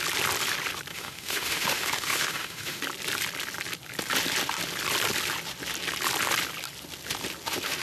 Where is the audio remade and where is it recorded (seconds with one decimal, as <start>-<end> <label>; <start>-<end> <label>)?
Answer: 0.0-0.9 recorded; 0.9-2.8 remade; 2.8-7.8 recorded